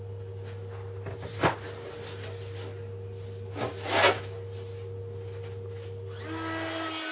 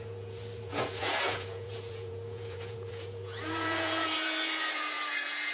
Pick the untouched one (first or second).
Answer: first